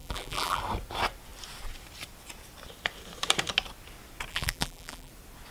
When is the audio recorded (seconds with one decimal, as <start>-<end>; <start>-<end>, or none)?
0.6-4.3; 5.1-5.5